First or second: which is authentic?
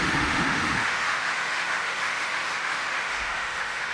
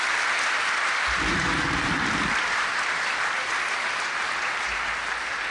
second